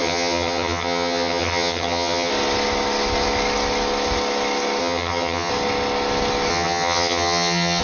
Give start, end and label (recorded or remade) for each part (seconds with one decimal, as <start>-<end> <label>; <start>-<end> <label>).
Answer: 0.0-2.3 remade; 2.3-4.8 recorded; 4.8-5.5 remade; 5.5-6.5 recorded; 6.5-7.8 remade